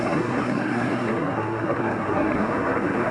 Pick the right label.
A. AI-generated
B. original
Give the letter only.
A